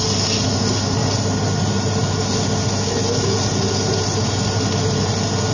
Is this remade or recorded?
recorded